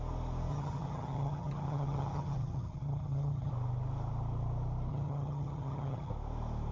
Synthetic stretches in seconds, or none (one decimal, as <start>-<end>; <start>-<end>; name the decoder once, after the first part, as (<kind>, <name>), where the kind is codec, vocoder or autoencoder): 0.5-3.5 (vocoder, HiFi-GAN); 4.9-6.1